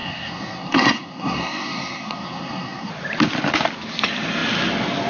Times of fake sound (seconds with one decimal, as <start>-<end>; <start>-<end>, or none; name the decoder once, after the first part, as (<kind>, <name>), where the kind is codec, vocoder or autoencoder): 0.0-2.9 (codec, SNAC)